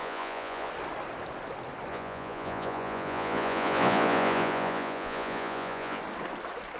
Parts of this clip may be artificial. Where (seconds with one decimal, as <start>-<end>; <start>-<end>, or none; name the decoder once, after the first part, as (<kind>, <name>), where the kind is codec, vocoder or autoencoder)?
0.0-0.7 (vocoder, Vocos); 1.9-6.0